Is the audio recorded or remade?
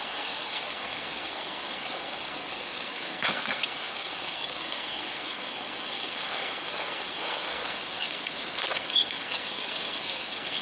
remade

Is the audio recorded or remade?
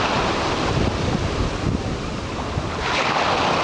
recorded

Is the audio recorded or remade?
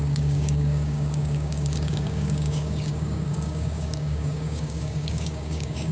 remade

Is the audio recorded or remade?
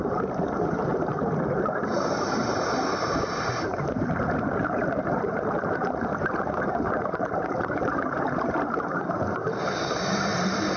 remade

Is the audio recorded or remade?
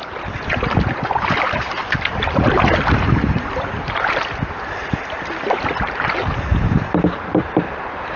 remade